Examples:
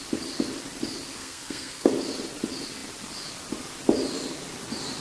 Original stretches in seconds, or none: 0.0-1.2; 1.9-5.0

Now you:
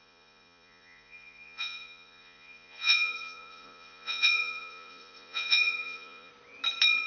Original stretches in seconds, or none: 6.3-7.1

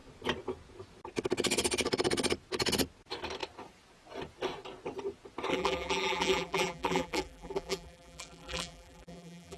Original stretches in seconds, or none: 0.0-5.5

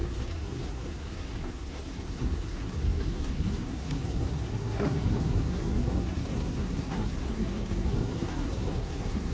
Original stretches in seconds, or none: none